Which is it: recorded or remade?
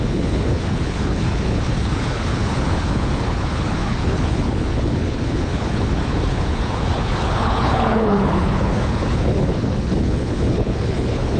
remade